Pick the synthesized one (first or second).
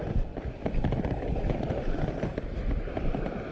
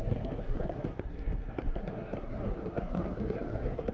second